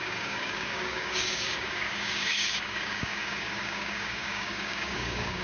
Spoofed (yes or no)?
yes